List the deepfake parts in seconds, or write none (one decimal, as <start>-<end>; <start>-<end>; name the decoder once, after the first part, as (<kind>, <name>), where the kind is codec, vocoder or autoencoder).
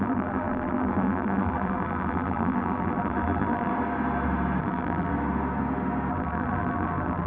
0.0-3.7 (vocoder, BigVGAN v2); 4.6-5.1; 6.1-7.3